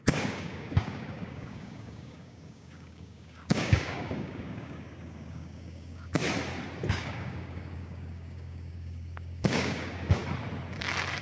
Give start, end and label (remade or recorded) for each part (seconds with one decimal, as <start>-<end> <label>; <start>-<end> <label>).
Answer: 0.0-6.2 remade; 6.2-6.9 recorded; 6.9-10.2 remade; 10.2-11.2 recorded